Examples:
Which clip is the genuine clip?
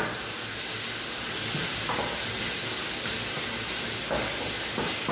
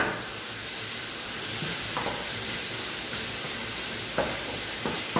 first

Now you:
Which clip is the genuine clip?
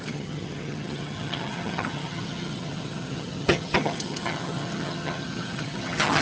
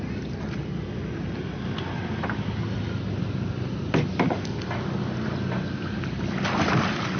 second